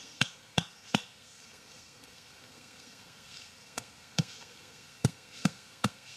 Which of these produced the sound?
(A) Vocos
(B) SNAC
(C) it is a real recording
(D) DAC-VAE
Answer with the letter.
B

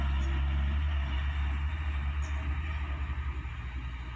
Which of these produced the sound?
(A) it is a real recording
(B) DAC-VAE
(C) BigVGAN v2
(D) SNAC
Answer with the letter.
A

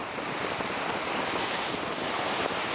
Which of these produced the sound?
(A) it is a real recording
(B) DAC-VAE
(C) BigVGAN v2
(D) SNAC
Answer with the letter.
A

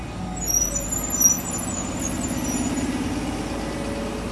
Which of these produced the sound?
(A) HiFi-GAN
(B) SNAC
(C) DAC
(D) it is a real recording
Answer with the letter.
D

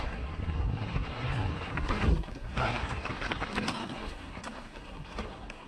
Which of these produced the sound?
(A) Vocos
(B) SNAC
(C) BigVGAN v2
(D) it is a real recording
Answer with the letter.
B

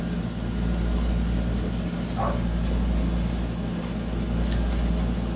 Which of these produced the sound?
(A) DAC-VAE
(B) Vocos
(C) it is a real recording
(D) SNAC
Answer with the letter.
C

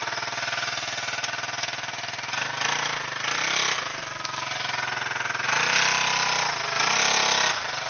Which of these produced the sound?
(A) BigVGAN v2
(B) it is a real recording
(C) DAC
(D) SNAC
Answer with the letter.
B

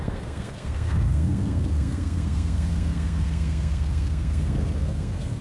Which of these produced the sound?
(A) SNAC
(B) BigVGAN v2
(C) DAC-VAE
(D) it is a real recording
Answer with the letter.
A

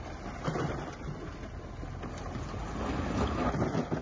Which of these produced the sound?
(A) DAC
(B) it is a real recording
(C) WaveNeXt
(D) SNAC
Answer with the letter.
B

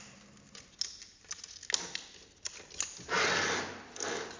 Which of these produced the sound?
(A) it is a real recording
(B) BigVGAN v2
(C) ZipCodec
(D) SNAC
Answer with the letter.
A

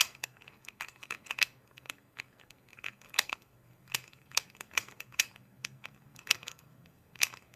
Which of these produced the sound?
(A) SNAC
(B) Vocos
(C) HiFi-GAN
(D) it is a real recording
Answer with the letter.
A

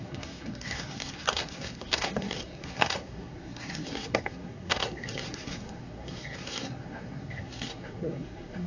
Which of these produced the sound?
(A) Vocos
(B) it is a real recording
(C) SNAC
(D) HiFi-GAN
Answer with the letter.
C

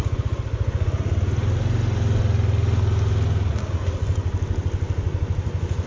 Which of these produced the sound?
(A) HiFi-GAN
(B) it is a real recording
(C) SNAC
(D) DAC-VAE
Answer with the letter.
B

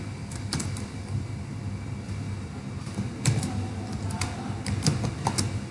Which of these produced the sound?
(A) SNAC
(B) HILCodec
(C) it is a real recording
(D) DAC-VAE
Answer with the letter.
C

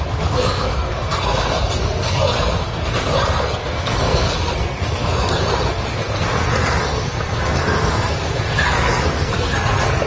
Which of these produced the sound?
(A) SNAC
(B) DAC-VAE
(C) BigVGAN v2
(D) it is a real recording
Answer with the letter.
A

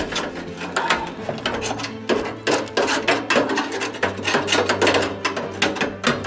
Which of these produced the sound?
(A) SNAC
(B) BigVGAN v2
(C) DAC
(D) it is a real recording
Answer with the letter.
D